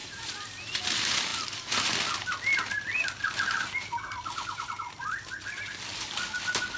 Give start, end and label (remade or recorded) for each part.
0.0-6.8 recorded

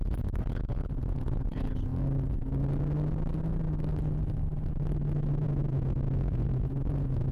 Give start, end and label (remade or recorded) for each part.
0.0-1.9 remade; 1.9-5.3 recorded; 5.3-7.3 remade

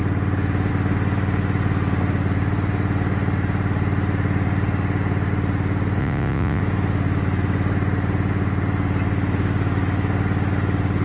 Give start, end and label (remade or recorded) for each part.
0.0-6.0 recorded; 6.0-6.6 remade; 6.6-11.0 recorded